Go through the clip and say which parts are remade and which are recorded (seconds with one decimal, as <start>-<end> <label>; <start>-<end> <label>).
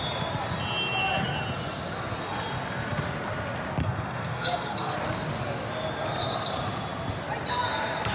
0.0-3.8 recorded; 3.8-5.0 remade; 5.0-8.1 recorded